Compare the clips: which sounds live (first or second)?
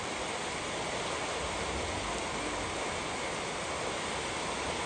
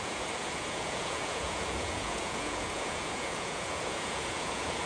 first